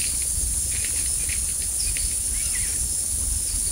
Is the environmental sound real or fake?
real